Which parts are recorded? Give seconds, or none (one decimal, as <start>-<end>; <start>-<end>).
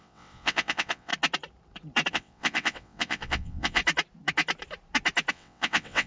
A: 1.1-2.1; 3.8-5.3